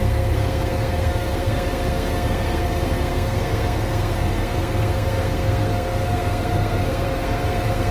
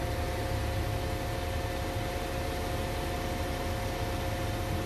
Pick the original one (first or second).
second